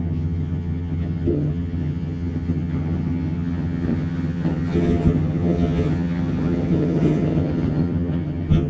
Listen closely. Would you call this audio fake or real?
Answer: fake